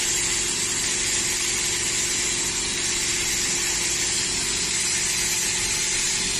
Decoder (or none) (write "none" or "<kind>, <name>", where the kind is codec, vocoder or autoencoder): none